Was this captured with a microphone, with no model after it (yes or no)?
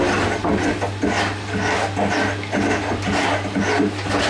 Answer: yes